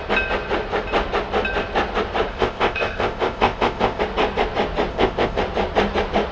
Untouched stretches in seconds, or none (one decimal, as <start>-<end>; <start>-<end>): 0.0-2.3; 4.0-4.9; 5.4-6.3